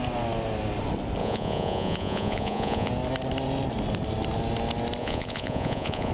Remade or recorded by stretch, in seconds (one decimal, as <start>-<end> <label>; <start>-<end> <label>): 0.0-1.2 recorded; 1.2-2.9 remade; 2.9-5.0 recorded; 5.0-6.1 remade